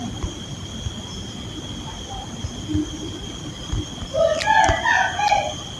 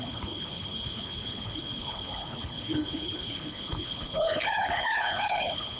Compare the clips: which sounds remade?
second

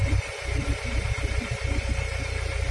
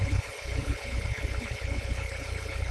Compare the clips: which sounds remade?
second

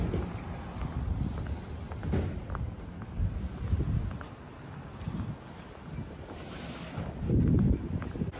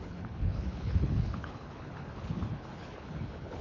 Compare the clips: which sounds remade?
second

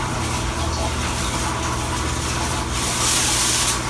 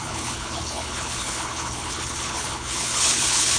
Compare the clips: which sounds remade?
second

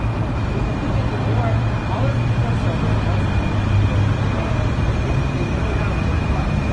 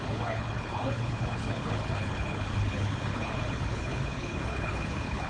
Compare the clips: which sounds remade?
second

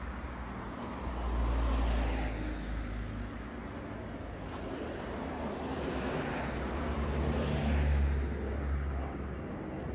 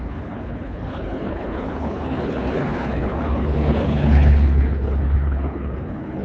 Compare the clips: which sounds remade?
second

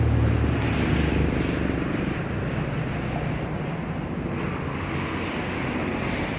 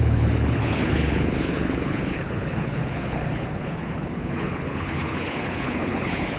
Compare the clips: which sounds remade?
second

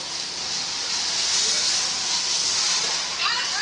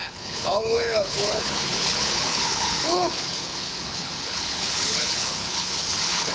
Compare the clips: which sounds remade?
second